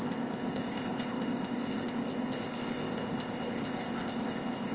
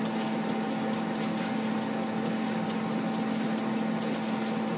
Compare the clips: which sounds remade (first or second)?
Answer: first